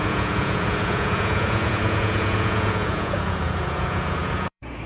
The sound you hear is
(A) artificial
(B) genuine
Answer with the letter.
A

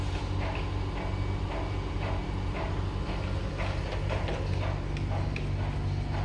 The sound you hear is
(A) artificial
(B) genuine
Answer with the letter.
B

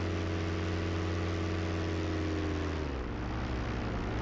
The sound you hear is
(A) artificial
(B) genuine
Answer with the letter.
B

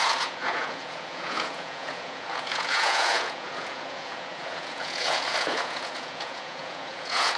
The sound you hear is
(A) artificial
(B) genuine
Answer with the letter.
A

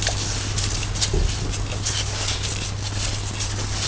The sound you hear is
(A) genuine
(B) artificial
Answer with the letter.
A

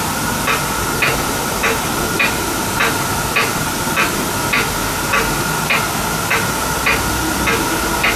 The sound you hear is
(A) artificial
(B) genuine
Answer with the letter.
B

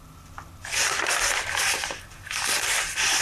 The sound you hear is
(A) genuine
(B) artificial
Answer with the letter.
A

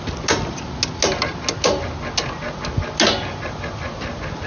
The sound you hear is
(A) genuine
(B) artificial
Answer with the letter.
A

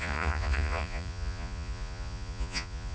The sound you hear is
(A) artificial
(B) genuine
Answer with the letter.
A